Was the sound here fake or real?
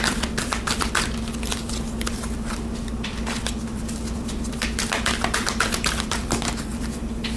fake